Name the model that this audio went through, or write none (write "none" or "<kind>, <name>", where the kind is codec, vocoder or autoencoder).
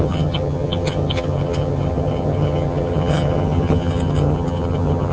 vocoder, HiFi-GAN